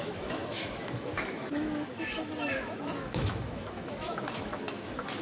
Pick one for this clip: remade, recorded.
remade